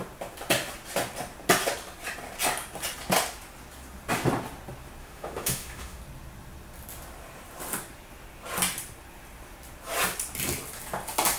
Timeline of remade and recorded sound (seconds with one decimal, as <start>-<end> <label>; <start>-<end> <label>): 0.0-5.0 recorded; 5.0-6.0 remade; 6.0-11.4 recorded